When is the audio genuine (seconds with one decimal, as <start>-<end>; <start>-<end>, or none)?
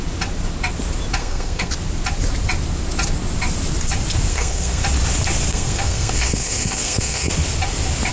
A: 0.0-1.2; 1.7-4.3; 4.8-5.5; 7.3-8.1